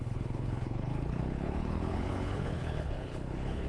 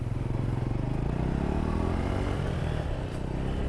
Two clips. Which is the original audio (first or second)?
second